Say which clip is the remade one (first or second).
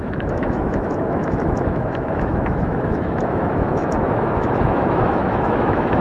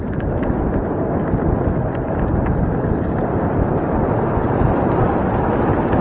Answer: first